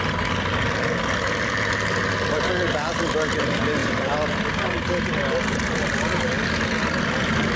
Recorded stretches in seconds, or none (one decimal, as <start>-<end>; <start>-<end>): 0.0-3.8; 4.5-7.6